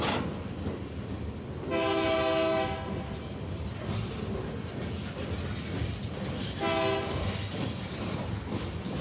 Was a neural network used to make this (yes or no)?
no